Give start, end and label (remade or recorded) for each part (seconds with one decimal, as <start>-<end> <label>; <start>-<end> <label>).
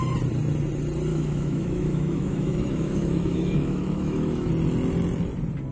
0.0-1.1 recorded; 1.1-4.5 remade; 4.5-5.7 recorded